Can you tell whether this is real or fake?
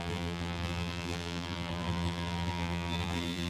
fake